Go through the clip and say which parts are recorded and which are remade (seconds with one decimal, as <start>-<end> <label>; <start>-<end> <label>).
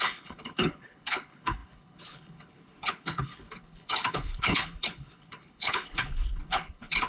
0.0-7.1 remade